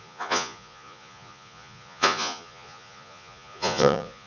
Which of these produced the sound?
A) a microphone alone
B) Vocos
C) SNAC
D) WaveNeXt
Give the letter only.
B